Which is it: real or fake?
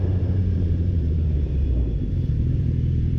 fake